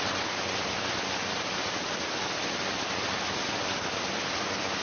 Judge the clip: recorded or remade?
recorded